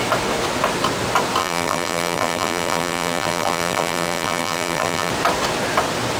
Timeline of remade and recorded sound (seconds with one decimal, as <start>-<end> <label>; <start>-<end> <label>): 0.0-1.4 recorded; 1.4-5.1 remade; 5.1-6.2 recorded